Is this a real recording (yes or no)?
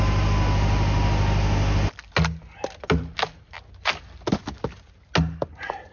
yes